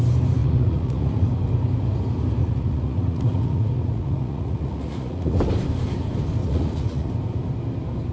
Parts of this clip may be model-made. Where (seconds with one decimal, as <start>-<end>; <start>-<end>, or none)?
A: 0.4-1.3; 2.4-5.4; 6.4-7.1

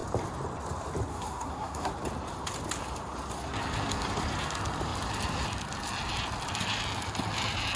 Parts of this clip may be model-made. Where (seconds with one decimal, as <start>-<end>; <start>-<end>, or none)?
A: 1.1-1.9

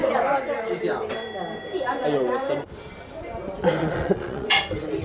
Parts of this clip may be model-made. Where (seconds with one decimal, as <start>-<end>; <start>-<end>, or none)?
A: 3.8-4.5

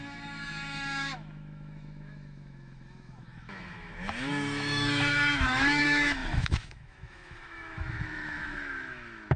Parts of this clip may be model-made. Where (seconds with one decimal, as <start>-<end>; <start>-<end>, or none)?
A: 0.0-9.4

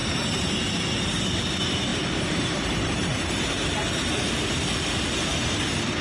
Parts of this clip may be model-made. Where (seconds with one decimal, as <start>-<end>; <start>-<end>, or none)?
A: 0.0-0.5; 1.9-4.3

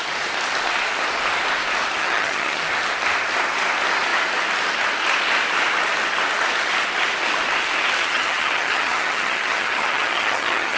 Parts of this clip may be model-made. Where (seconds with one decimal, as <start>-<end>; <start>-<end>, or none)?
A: 2.0-2.6; 8.0-10.8

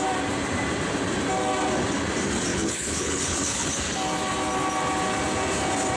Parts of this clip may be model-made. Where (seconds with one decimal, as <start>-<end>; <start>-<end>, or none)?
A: 2.5-3.7

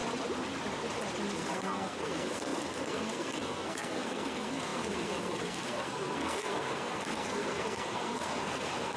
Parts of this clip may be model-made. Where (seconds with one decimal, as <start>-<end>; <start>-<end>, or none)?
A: 1.3-9.0